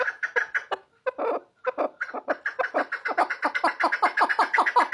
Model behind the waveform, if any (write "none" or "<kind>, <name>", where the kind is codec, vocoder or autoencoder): none